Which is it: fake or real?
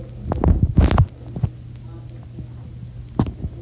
real